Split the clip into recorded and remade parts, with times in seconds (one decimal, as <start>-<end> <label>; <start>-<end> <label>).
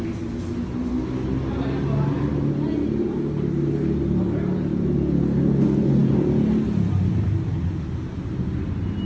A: 0.0-9.1 recorded